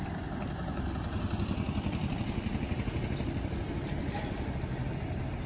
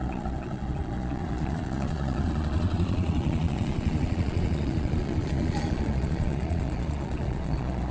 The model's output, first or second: second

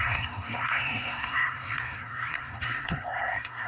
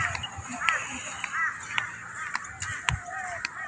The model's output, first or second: first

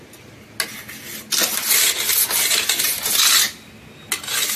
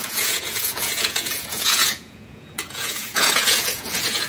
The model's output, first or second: second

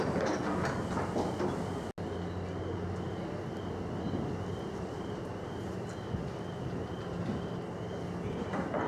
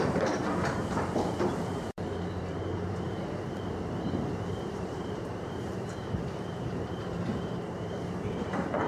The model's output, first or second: second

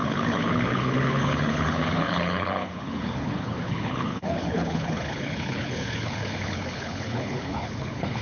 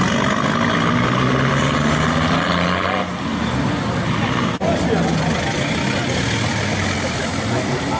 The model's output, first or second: first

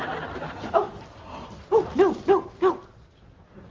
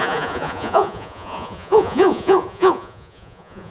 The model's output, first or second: second